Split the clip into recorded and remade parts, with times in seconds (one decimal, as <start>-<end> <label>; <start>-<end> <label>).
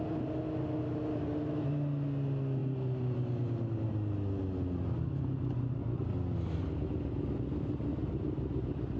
0.0-7.9 recorded; 7.9-9.0 remade